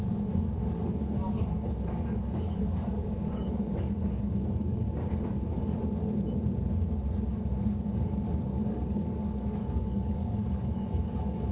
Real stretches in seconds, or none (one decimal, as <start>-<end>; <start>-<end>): 5.6-7.3